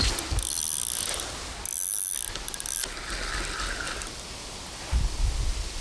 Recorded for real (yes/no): yes